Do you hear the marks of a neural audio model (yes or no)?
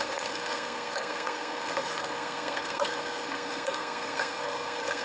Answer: yes